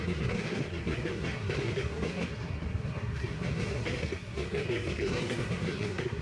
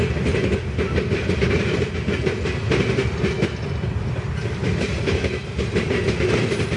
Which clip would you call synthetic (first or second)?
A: first